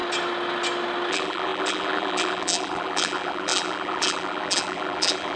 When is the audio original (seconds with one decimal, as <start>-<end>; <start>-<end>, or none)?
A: 0.0-1.1